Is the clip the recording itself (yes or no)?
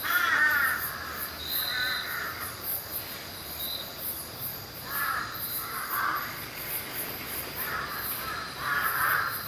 no